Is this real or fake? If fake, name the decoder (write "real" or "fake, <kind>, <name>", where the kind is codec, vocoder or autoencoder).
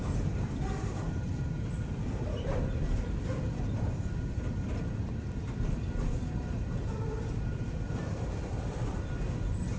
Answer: real